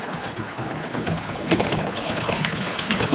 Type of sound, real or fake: fake